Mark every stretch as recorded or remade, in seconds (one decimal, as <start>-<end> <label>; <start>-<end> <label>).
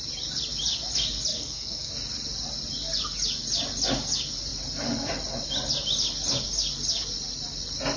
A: 0.0-1.3 recorded; 1.3-1.9 remade; 1.9-8.0 recorded